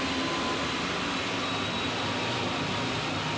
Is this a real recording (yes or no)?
yes